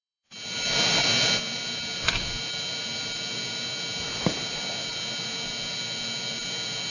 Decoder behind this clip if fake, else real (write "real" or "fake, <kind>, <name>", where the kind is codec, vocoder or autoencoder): fake, vocoder, BigVGAN v2